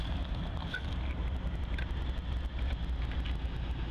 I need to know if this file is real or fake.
real